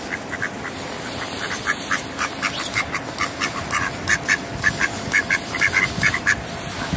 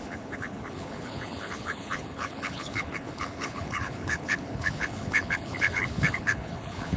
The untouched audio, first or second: first